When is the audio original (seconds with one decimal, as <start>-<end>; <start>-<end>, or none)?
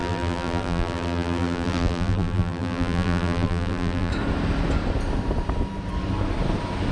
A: 4.1-6.9